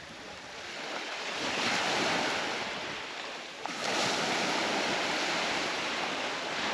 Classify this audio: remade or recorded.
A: remade